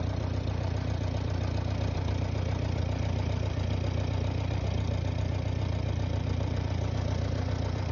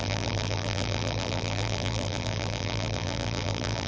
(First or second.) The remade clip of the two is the second